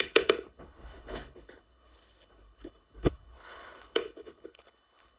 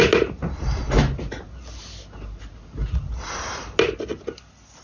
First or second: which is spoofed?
first